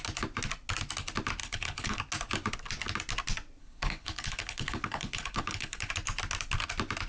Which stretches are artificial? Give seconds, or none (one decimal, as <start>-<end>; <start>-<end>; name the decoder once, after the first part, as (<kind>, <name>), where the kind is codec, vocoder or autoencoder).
1.4-2.0 (codec, HILCodec); 3.6-5.9